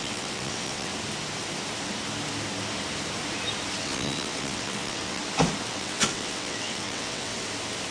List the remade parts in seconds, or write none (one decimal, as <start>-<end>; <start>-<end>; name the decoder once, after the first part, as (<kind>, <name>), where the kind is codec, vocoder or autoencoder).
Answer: 0.0-0.9 (vocoder, WaveNeXt); 3.8-5.2; 5.7-7.3